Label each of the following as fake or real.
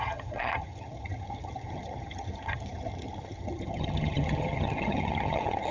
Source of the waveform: fake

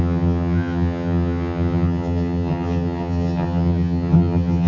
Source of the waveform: fake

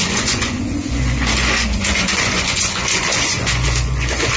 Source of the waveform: fake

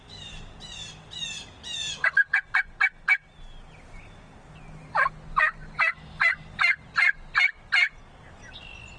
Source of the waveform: real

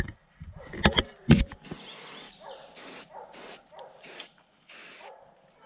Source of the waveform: fake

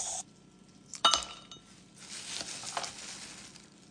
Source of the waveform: real